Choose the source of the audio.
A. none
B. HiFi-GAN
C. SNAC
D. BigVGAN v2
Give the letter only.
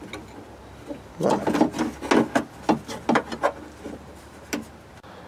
A